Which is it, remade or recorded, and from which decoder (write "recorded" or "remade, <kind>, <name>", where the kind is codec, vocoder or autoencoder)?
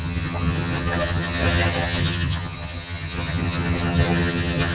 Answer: remade, vocoder, HiFi-GAN